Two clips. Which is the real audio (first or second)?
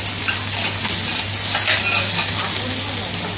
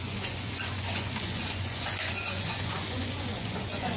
first